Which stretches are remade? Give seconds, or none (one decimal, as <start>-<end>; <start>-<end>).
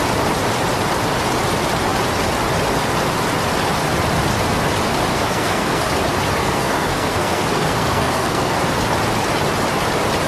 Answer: 5.1-5.9; 6.4-8.6